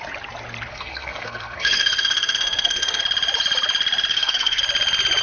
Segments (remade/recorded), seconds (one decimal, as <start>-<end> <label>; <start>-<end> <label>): 0.0-0.7 recorded; 0.7-3.0 remade; 3.0-4.1 recorded; 4.1-4.6 remade; 4.6-5.2 recorded